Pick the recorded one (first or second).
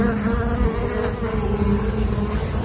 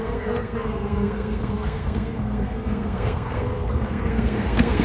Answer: first